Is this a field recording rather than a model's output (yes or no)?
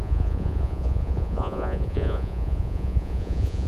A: no